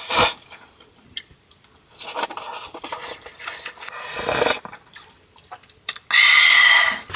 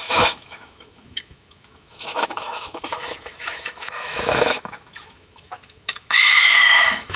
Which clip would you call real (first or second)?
first